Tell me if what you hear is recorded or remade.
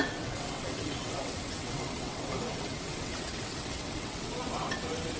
remade